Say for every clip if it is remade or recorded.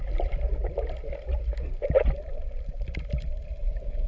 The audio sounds recorded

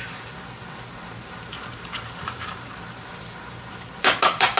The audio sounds remade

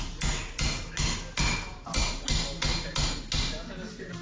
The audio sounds recorded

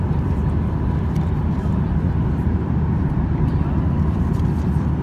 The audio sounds remade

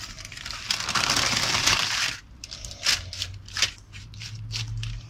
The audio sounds recorded